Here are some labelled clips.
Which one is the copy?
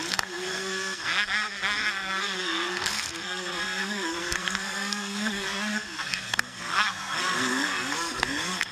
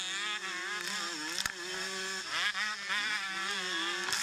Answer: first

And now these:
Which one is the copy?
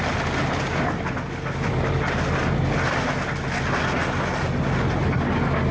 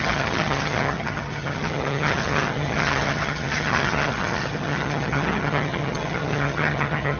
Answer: second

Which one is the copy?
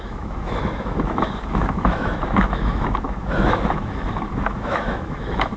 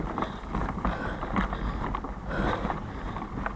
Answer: first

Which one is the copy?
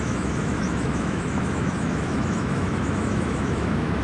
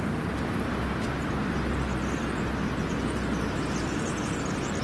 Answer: first